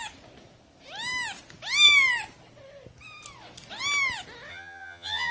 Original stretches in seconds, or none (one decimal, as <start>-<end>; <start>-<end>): 0.0-4.5